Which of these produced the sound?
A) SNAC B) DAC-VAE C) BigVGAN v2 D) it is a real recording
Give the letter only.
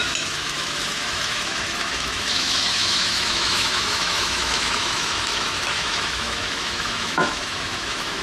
B